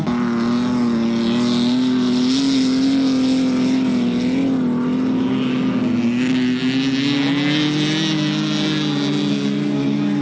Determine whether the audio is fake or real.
real